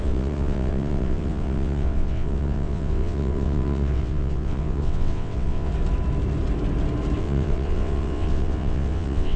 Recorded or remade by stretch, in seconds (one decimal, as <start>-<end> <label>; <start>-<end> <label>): 0.0-5.7 remade; 5.7-7.2 recorded; 7.2-9.4 remade